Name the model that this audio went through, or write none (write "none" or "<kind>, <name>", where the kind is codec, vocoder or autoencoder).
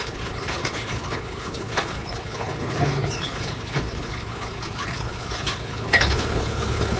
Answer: codec, HILCodec